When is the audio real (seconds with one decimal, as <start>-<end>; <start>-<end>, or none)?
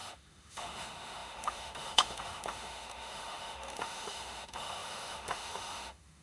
none